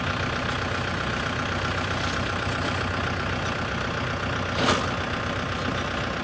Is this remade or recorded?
recorded